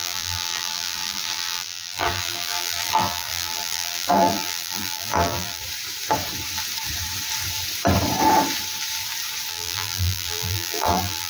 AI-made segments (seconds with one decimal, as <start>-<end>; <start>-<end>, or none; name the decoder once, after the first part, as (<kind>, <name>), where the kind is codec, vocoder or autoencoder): 0.0-5.6 (vocoder, BigVGAN v2); 9.5-11.3